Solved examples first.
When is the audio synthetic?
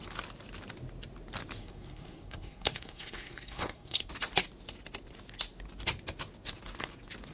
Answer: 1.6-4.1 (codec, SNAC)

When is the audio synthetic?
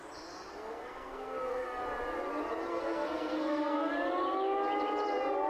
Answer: 0.5-1.8 (codec, SNAC); 2.7-3.9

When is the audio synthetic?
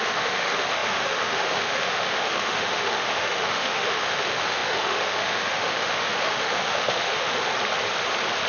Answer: 0.0-7.5 (autoencoder, DAC-VAE)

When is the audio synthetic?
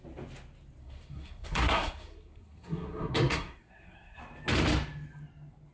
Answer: 0.8-4.2 (codec, SNAC)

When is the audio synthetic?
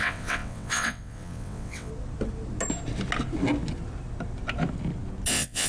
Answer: 0.0-1.9 (vocoder, WaveNeXt); 5.3-5.7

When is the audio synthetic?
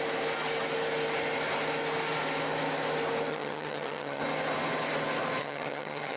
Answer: 3.3-4.2 (vocoder, HiFi-GAN); 5.4-6.2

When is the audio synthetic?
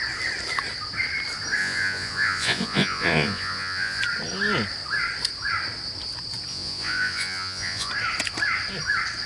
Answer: 1.6-4.0 (vocoder, Vocos); 6.5-7.9